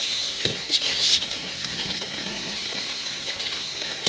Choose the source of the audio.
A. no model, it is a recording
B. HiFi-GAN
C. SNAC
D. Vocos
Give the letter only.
C